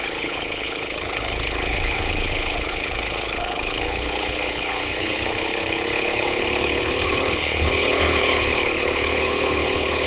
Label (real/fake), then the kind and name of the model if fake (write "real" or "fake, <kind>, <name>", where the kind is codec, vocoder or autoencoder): fake, codec, HILCodec